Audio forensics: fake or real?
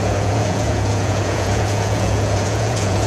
fake